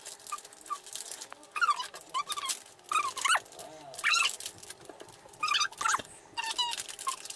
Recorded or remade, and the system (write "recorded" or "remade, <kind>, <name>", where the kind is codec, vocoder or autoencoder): recorded